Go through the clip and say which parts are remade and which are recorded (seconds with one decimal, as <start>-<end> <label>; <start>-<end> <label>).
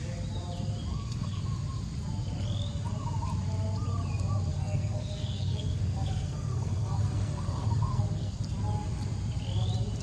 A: 0.0-0.9 recorded; 0.9-1.4 remade; 1.4-4.5 recorded; 4.5-8.4 remade; 8.4-10.0 recorded